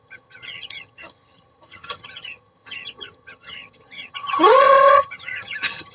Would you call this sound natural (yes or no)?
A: no